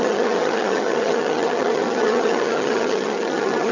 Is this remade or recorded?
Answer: remade